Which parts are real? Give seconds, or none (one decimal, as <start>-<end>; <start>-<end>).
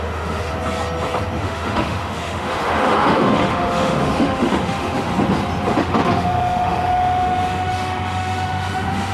0.5-1.4; 5.1-5.8